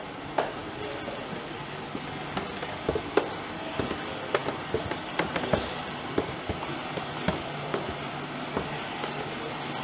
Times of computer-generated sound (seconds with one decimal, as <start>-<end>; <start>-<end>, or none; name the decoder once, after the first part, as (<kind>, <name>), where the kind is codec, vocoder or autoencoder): none